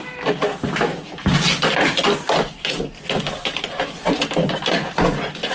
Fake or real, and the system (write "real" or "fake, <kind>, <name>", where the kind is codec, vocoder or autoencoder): real